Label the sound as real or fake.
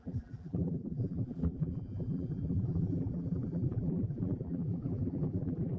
fake